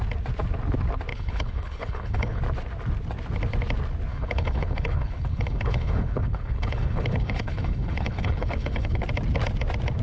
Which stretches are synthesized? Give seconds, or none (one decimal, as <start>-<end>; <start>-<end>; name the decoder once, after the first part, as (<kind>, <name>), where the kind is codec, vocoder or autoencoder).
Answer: 1.1-2.4 (codec, HILCodec); 4.1-9.0